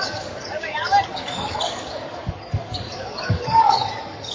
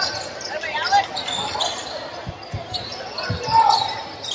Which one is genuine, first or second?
second